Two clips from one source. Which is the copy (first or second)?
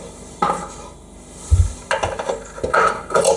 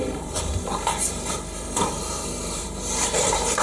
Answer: second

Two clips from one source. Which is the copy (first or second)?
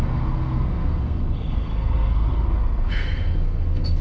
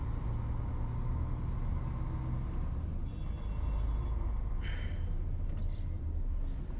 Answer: first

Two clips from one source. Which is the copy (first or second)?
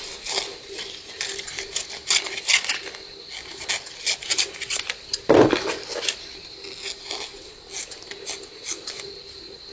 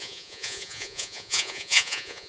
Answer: second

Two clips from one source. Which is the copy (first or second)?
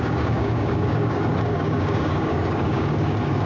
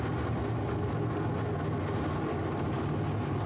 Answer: first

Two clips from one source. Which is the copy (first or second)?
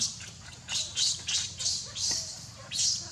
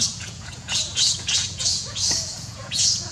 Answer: second